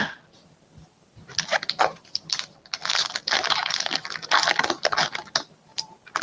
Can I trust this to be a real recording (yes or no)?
yes